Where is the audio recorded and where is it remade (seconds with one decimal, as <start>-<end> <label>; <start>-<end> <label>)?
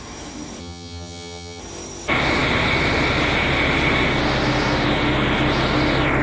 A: 0.0-0.6 recorded; 0.6-1.6 remade; 1.6-6.2 recorded